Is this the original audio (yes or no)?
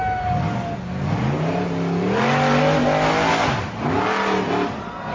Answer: yes